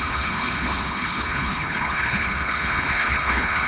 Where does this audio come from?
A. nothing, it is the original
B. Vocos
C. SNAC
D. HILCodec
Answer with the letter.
D